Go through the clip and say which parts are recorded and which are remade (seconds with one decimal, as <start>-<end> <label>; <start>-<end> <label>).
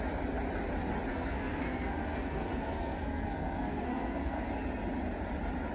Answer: 0.0-1.1 recorded; 1.1-4.5 remade; 4.5-5.7 recorded